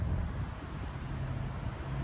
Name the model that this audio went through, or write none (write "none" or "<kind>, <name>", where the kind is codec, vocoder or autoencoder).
none